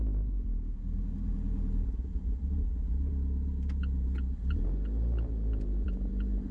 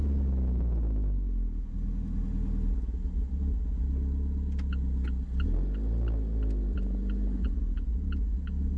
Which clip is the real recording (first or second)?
second